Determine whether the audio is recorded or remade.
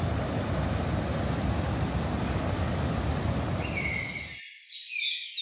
recorded